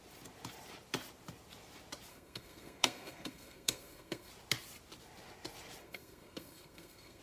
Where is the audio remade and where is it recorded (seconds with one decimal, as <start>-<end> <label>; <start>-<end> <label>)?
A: 0.0-2.1 recorded; 2.1-4.3 remade; 4.3-5.8 recorded; 5.8-7.2 remade